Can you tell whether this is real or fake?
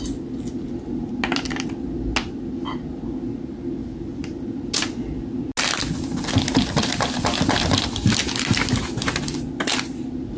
real